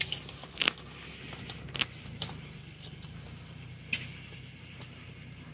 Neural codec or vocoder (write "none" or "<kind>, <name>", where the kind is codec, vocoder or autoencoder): none